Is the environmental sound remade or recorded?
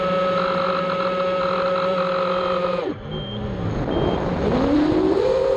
recorded